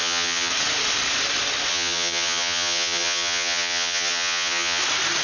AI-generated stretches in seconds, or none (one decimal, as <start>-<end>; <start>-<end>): 0.0-0.5; 1.7-4.8